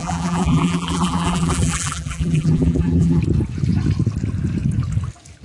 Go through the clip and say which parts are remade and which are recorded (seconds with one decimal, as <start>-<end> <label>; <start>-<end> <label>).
0.0-3.2 remade; 3.2-5.4 recorded